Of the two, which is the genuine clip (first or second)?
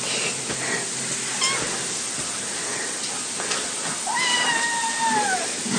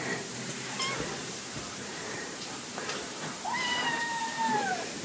first